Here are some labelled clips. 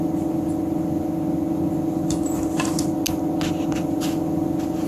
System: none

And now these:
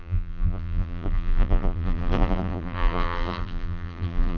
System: vocoder, BigVGAN v2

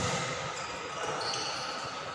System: none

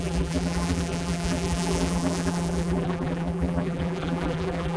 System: vocoder, BigVGAN v2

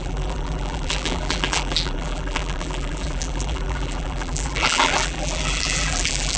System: vocoder, BigVGAN v2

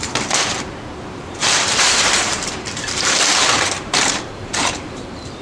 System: vocoder, BigVGAN v2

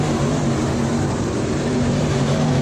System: vocoder, BigVGAN v2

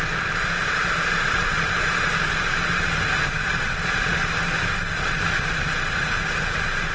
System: none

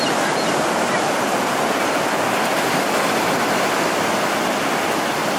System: none